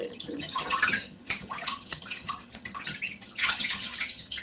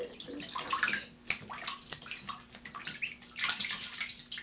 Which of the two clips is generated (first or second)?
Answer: first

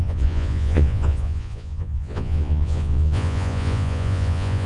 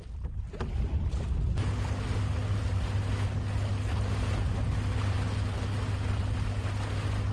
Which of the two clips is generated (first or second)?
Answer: first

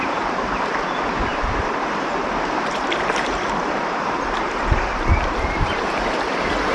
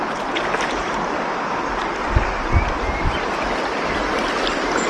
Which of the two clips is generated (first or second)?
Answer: first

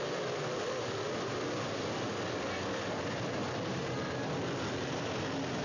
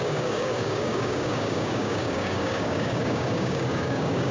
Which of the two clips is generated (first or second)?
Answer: second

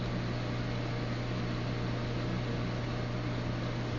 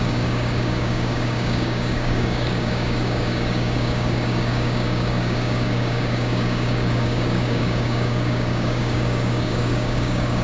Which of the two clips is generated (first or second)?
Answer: second